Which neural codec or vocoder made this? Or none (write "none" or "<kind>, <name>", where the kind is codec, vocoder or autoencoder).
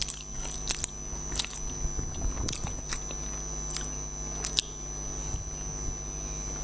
none